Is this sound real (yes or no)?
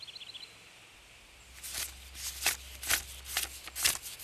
yes